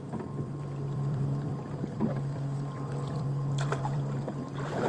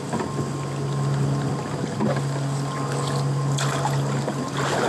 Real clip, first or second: second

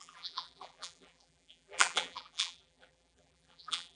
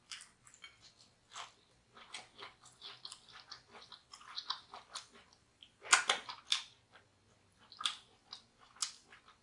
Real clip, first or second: second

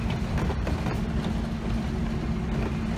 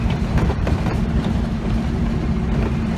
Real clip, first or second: first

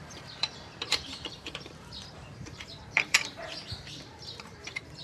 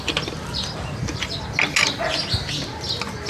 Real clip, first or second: second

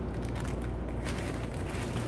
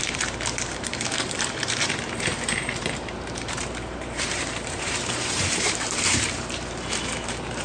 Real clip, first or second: first